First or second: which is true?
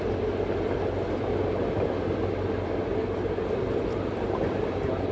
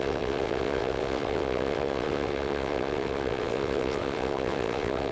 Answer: first